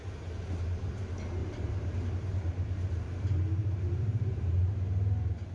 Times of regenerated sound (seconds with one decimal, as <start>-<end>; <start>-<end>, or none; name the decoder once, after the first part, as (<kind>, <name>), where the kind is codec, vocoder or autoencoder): 1.4-4.7 (vocoder, BigVGAN v2)